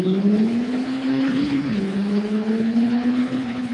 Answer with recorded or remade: remade